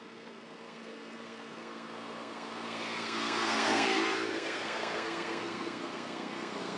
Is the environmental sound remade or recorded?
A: remade